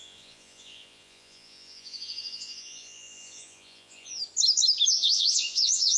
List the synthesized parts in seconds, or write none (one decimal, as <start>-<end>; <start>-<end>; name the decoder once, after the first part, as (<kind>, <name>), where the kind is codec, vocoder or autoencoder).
0.0-4.2 (vocoder, Vocos); 4.9-6.0